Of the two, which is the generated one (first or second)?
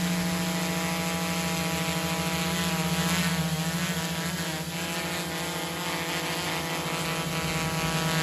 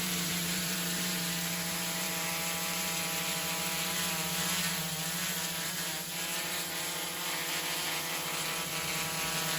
second